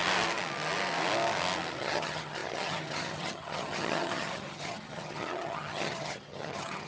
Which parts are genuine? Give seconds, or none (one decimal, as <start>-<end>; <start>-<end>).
0.0-1.8